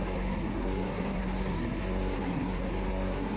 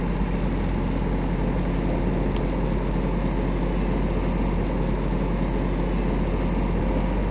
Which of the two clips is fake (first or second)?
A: first